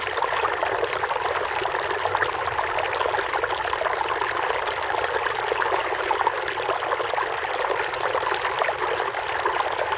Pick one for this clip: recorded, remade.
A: recorded